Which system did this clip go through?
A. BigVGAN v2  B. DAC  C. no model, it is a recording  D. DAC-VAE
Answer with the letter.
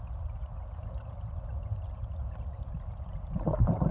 C